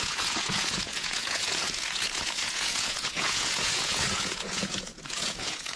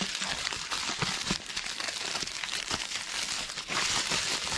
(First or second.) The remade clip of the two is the first